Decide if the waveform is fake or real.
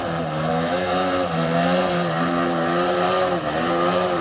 fake